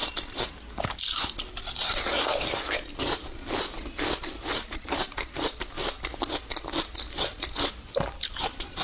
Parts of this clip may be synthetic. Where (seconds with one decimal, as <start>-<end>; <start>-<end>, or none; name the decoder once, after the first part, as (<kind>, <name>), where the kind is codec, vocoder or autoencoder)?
4.2-6.1 (vocoder, BigVGAN v2); 7.4-8.8